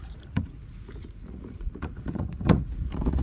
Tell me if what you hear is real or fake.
fake